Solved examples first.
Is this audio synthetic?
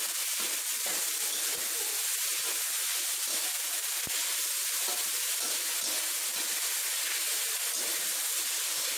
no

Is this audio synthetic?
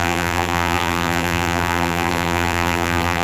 yes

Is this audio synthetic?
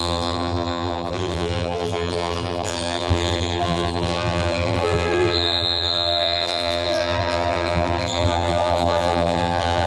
yes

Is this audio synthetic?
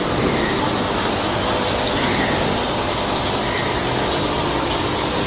no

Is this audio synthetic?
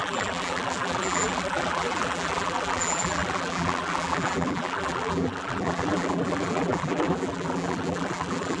yes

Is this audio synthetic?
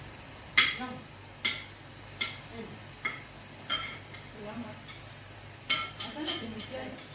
yes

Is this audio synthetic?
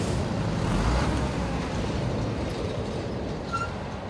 yes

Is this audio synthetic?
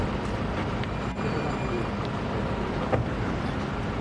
no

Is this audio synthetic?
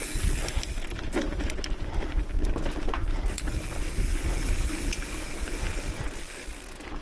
no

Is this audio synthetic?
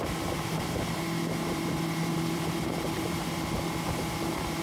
yes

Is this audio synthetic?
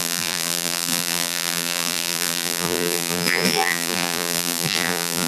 yes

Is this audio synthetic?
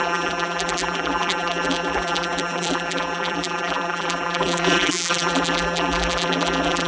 yes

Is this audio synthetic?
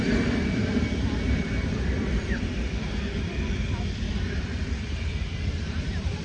yes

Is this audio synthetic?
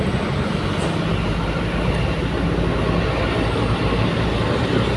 no